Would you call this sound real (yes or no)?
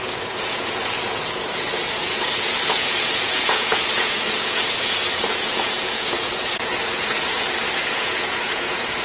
no